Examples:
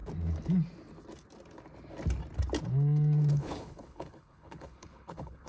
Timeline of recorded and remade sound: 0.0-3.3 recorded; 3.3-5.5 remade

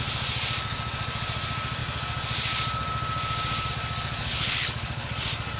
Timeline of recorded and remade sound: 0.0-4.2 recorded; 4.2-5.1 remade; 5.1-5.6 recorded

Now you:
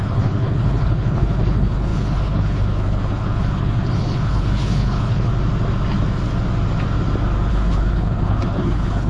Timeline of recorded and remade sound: 0.0-5.3 remade; 5.3-7.5 recorded; 7.5-9.1 remade

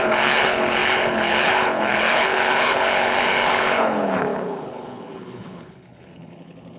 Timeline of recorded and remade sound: 0.0-6.8 remade